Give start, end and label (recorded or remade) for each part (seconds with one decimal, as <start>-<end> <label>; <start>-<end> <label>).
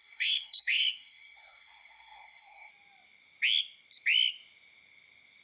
0.0-2.7 remade; 2.7-5.4 recorded